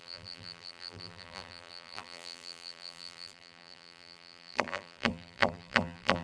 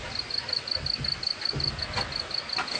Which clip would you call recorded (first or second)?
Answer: second